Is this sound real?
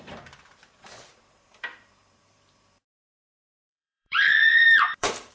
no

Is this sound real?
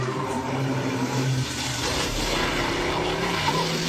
no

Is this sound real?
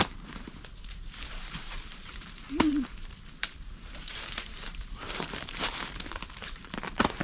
no